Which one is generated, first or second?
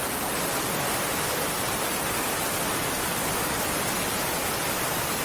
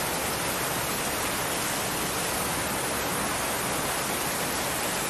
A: first